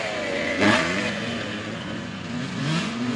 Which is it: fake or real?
fake